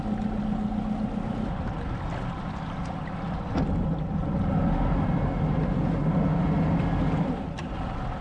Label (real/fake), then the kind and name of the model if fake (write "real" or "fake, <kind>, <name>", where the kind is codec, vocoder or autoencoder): real